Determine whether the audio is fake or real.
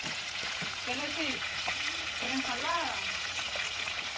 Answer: fake